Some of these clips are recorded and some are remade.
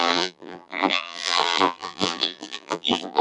remade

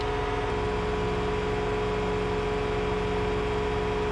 recorded